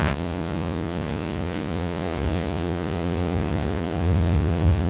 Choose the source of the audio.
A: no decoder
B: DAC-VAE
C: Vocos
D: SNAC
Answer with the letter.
C